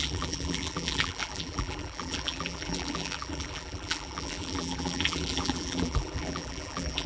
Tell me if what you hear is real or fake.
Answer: fake